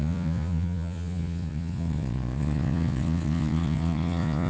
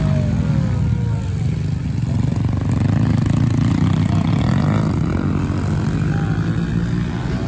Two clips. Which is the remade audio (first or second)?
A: first